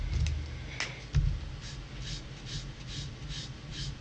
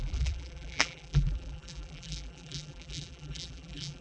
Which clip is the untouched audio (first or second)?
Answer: first